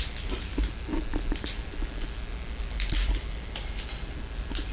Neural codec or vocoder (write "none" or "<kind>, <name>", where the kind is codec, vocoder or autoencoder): none